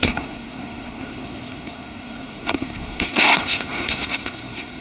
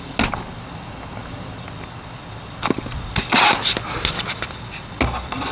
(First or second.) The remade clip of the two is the first